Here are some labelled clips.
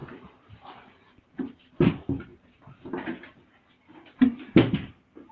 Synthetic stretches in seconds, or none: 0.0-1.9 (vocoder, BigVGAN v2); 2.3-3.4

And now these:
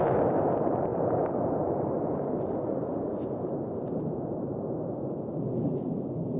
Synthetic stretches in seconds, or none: 0.9-4.7 (vocoder, BigVGAN v2)

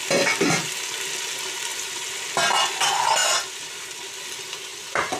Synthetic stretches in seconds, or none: 1.7-2.8 (vocoder, BigVGAN v2); 3.2-4.2; 4.7-5.2

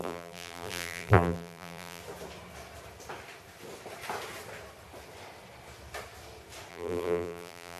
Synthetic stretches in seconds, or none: 0.0-2.0 (vocoder, BigVGAN v2); 6.7-7.8

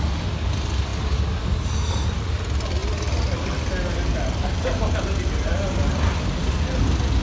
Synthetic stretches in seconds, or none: none

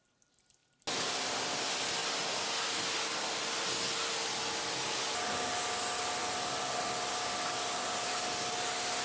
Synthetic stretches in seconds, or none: 6.2-8.1 (vocoder, BigVGAN v2)

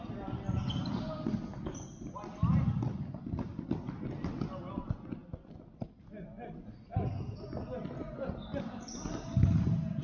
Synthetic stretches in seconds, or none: none

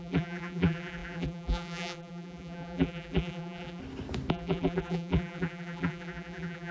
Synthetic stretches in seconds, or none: 0.0-3.8 (vocoder, BigVGAN v2); 4.3-6.7